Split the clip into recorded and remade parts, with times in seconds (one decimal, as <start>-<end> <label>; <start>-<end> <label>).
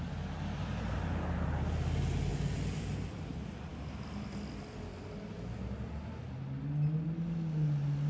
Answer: 0.0-2.3 recorded; 2.3-3.3 remade; 3.3-8.1 recorded